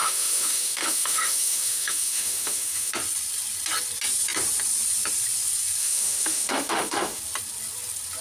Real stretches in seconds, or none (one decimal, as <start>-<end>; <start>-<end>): 2.9-5.8; 7.2-8.2

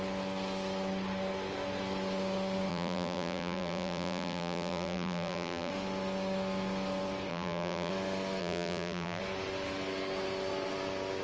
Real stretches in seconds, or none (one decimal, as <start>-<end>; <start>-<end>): 0.0-2.7; 5.7-7.3; 7.9-8.4; 9.2-11.2

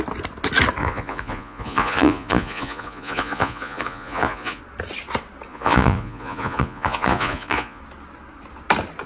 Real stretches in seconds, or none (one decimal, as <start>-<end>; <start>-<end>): 0.0-0.8; 4.6-5.5; 7.8-9.1

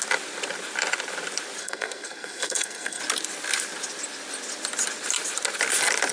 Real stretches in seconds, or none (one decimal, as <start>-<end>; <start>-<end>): 0.0-1.6; 3.0-6.1

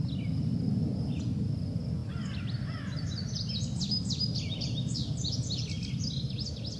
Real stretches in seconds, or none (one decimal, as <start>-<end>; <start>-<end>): 0.0-6.8

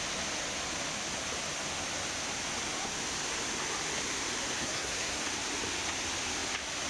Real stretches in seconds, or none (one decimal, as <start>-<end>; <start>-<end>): 0.0-4.6; 5.2-6.9

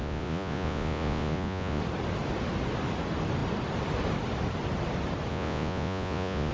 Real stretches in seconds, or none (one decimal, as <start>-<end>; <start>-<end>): 1.8-5.3